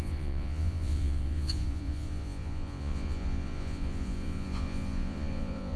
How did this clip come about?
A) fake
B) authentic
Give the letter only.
A